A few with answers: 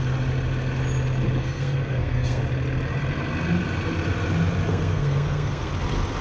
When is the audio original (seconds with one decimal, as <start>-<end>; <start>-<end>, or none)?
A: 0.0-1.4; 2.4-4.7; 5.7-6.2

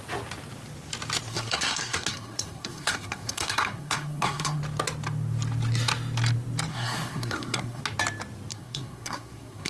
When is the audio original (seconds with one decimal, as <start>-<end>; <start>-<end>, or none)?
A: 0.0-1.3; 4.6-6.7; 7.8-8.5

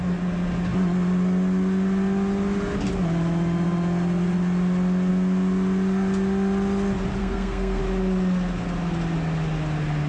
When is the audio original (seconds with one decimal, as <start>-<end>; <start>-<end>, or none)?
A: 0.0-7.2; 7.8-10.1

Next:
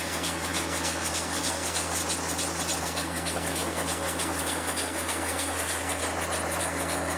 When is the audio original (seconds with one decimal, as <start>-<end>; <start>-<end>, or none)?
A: 2.0-2.8; 6.0-6.6

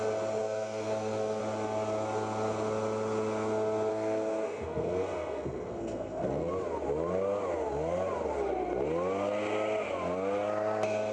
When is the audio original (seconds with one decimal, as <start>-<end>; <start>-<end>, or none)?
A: 0.0-0.4; 1.4-3.9; 6.5-11.1

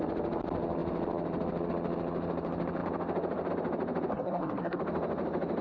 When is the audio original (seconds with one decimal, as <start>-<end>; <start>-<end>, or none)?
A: 0.0-4.1; 4.8-5.6

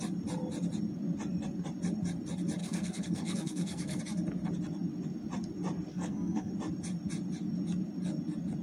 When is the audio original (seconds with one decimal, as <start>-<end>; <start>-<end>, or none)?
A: 0.0-2.6; 4.0-5.9; 6.5-8.6